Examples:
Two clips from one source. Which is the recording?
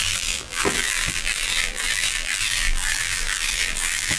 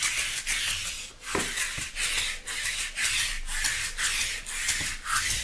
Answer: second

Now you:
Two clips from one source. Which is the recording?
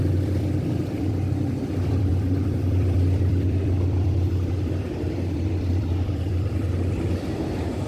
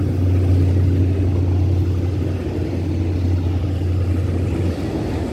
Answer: second